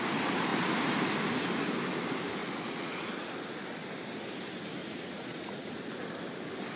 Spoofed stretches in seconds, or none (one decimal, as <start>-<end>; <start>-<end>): 2.4-3.1; 4.8-5.7